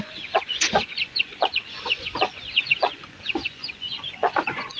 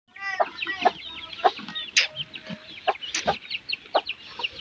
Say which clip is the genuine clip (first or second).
second